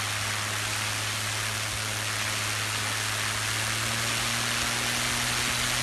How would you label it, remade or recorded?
recorded